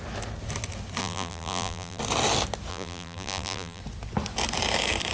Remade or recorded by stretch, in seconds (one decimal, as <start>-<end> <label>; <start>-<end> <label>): 0.0-1.0 recorded; 1.0-2.0 remade; 2.0-2.7 recorded; 2.7-3.8 remade; 3.8-5.1 recorded